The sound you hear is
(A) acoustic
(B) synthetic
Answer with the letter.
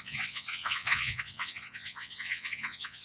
B